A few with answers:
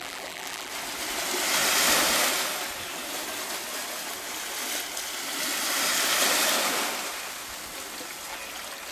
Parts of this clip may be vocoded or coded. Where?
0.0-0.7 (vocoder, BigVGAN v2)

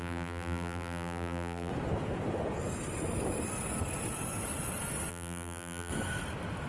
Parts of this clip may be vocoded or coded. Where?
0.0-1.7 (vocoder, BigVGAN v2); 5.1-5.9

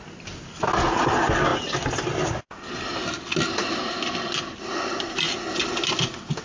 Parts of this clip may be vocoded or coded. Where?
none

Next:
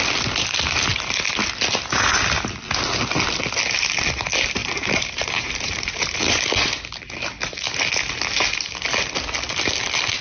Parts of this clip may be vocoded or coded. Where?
4.6-6.2 (vocoder, BigVGAN v2)

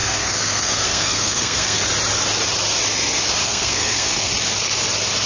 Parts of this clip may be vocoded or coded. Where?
0.0-1.8 (codec, SNAC); 3.4-4.3

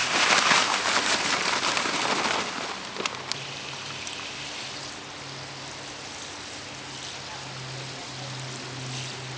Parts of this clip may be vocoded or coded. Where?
none

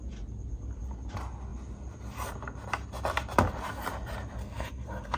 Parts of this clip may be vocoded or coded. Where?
4.4-5.2 (codec, SNAC)